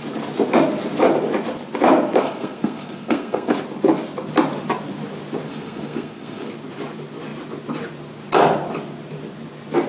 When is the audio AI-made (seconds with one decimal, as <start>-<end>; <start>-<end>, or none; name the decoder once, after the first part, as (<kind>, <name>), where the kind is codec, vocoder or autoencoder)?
2.2-3.5 (codec, SNAC); 5.5-6.5